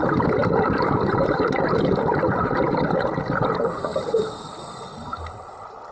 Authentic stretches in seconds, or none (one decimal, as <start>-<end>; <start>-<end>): 0.0-0.4; 1.5-5.9